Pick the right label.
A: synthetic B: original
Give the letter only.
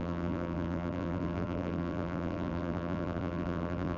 A